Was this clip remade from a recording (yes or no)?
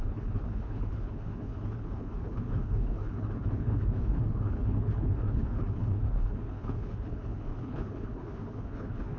yes